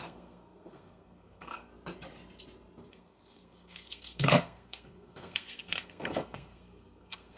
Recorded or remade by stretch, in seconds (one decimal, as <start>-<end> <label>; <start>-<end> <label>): 0.0-1.7 remade; 1.7-2.9 recorded; 2.9-7.4 remade